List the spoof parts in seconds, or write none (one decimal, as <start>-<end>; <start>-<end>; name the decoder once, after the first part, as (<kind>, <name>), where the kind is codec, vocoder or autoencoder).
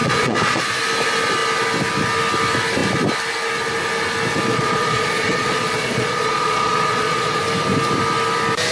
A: 0.0-0.6 (vocoder, Vocos); 4.5-7.4